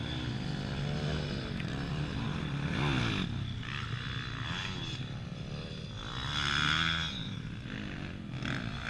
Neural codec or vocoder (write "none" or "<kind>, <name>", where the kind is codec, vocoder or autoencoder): none